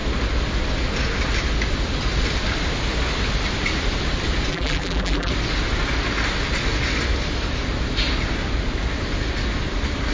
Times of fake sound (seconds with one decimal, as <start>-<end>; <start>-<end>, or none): 4.5-5.3